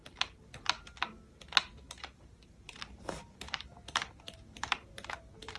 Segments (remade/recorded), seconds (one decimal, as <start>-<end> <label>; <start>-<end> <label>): 0.0-3.4 recorded; 3.4-5.6 remade